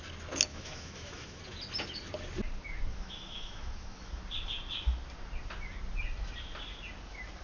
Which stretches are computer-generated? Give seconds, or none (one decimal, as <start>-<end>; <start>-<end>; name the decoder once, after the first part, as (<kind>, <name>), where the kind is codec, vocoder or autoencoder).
0.5-1.4 (autoencoder, DAC-VAE); 2.9-4.2